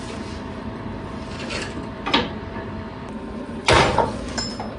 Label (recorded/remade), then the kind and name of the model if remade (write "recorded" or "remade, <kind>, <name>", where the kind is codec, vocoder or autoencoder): remade, vocoder, BigVGAN v2